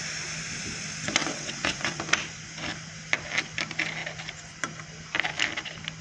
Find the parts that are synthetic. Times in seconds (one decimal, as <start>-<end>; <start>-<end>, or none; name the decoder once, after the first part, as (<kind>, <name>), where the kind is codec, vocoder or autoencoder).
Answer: 1.2-2.0 (vocoder, WaveNeXt)